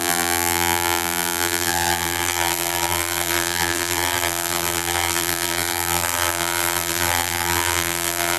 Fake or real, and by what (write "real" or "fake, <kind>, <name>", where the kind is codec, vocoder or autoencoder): fake, vocoder, BigVGAN v2